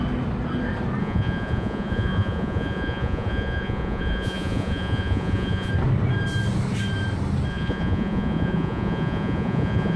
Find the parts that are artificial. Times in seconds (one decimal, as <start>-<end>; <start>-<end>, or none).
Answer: 1.0-5.7; 7.5-10.0